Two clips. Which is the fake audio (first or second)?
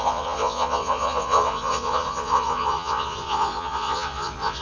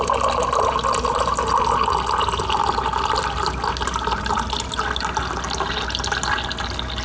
first